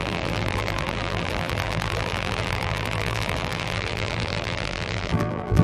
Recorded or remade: remade